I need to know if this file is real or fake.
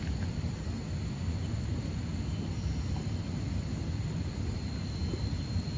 real